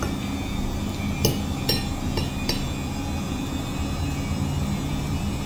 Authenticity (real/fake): real